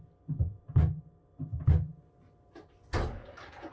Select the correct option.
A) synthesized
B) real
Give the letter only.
B